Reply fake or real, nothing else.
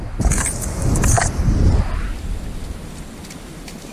real